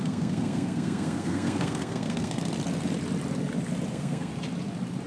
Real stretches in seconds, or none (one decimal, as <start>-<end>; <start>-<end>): 2.5-3.9; 4.3-5.1